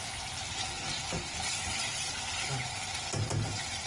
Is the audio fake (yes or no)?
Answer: no